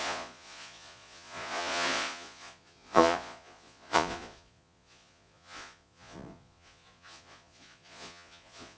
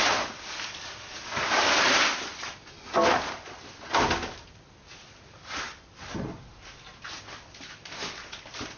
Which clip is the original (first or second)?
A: second